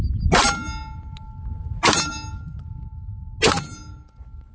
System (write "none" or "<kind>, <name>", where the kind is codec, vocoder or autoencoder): none